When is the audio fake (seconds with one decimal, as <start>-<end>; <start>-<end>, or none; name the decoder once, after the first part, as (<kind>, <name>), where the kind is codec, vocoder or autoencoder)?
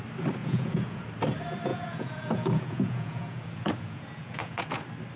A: 0.4-1.0 (vocoder, Vocos); 1.7-4.8